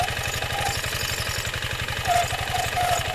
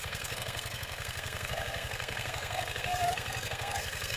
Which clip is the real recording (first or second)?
first